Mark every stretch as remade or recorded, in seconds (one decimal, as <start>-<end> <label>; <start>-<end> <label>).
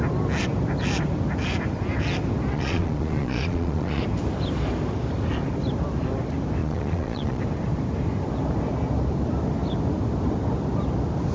0.0-2.5 recorded; 2.5-4.0 remade; 4.0-6.6 recorded; 6.6-7.4 remade; 7.4-11.3 recorded